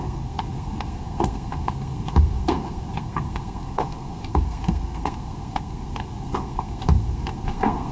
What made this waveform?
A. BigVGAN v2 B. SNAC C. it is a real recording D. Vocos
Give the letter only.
B